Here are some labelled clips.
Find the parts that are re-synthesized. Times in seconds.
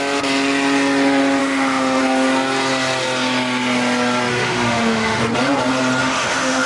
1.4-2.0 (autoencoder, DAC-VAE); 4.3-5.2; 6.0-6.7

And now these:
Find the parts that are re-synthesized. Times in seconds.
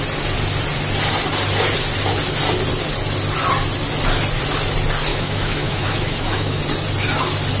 5.1-6.6 (autoencoder, DAC-VAE)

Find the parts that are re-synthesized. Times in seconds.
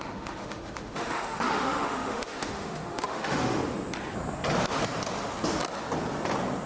0.0-3.6 (autoencoder, DAC-VAE)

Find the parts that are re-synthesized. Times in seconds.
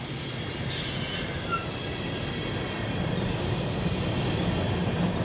none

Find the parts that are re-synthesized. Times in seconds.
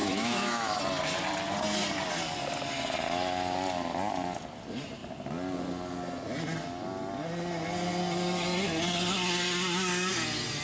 0.0-0.8 (autoencoder, DAC-VAE)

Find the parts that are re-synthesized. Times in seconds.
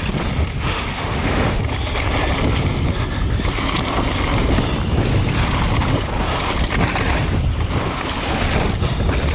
0.5-1.6 (autoencoder, DAC-VAE)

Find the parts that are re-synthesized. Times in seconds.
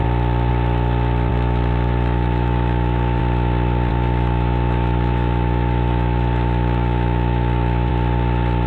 1.3-3.2 (autoencoder, DAC-VAE); 3.9-7.9